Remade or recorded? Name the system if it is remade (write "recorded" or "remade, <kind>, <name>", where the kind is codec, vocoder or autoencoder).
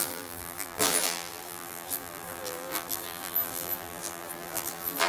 remade, vocoder, BigVGAN v2